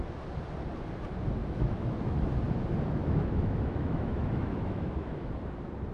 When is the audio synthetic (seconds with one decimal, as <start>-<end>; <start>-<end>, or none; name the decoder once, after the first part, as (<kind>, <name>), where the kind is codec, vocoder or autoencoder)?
1.4-2.3 (autoencoder, DAC-VAE); 3.0-5.3